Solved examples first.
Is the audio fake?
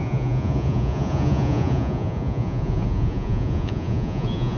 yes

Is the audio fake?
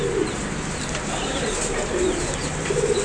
no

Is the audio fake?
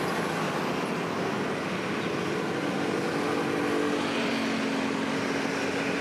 no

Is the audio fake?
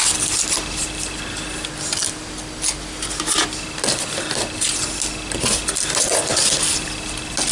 no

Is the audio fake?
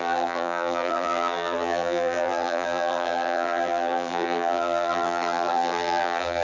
yes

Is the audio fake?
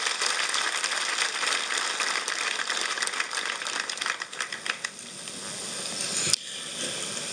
no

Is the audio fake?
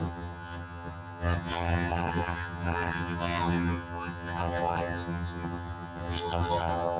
yes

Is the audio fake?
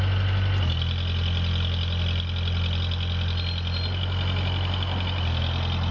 no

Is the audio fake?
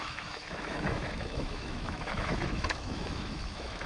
yes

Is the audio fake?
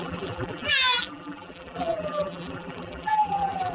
yes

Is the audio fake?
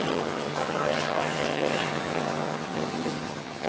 yes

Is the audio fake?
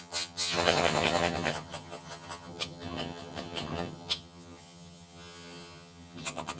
yes